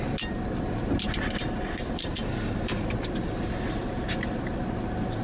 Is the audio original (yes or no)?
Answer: yes